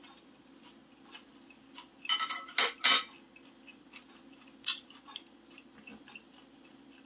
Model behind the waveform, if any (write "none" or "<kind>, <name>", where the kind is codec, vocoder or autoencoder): none